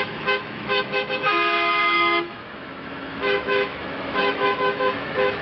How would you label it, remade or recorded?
remade